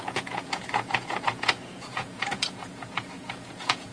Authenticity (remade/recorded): remade